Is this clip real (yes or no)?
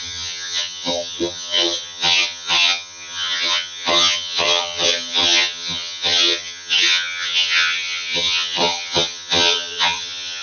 no